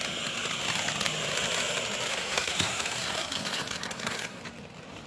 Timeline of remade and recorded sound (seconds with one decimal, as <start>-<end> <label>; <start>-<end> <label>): 0.0-2.1 recorded; 2.1-4.4 remade; 4.4-5.1 recorded